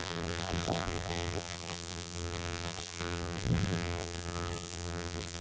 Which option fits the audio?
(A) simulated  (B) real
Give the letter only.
A